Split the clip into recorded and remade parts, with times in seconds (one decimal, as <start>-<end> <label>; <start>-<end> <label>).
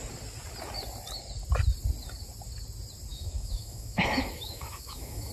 0.0-3.1 recorded; 3.1-5.3 remade